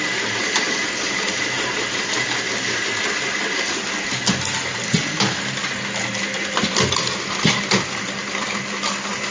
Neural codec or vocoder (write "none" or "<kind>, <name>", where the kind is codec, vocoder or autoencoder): none